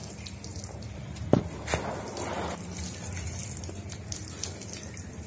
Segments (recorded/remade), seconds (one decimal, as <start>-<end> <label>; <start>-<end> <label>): 0.0-1.4 remade; 1.4-3.4 recorded; 3.4-4.2 remade; 4.2-5.3 recorded